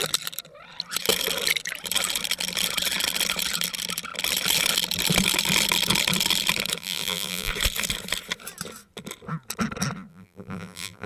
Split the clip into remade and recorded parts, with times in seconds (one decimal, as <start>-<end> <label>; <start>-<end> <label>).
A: 0.0-6.8 recorded; 6.8-7.5 remade; 7.5-10.1 recorded; 10.1-11.1 remade